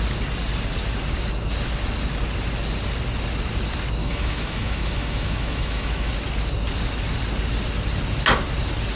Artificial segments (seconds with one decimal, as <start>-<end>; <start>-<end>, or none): 4.0-6.1